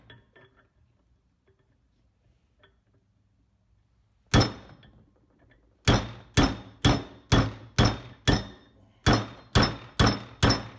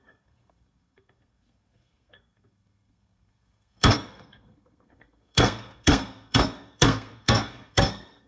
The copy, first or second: second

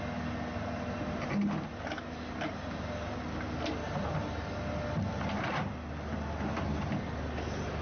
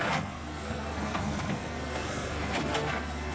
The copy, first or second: second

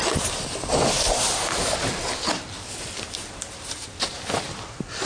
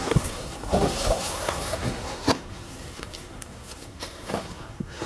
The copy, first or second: second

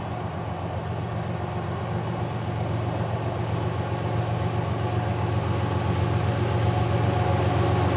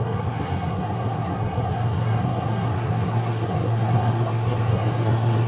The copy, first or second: second